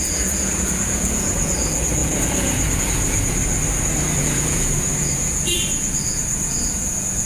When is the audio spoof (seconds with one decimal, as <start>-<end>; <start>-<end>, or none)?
0.0-3.4; 4.2-7.3